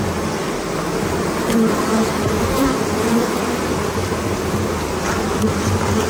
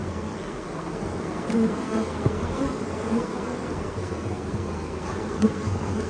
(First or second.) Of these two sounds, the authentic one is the first